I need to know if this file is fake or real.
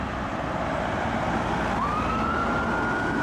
real